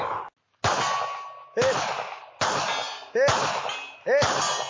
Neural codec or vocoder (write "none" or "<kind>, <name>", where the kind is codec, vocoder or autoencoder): none